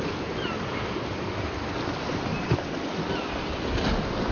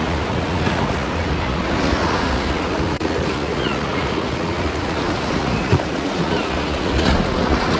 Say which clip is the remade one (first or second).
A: second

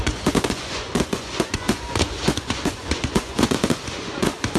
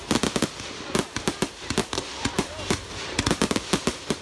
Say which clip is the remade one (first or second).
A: first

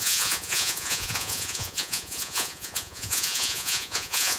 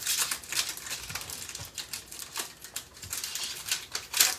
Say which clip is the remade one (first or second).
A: first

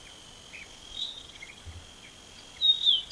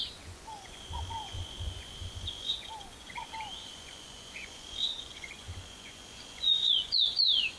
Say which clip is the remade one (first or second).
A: second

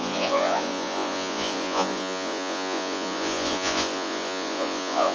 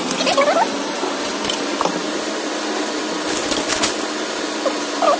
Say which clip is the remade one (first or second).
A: first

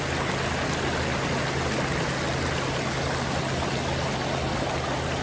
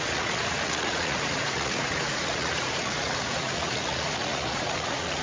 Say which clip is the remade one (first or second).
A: second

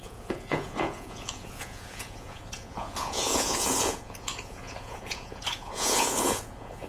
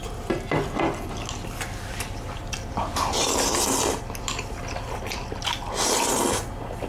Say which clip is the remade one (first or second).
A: first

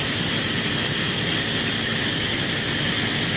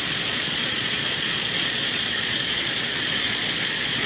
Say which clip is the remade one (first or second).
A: second